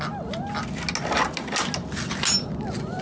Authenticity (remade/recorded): recorded